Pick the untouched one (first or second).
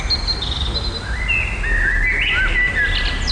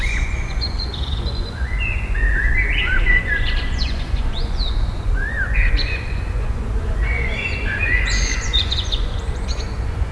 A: first